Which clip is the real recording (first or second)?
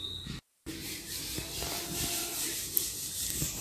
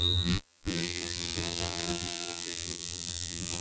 first